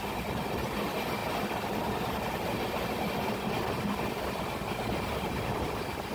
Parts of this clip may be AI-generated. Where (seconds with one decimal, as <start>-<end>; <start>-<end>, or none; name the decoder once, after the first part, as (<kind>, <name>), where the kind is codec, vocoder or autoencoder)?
none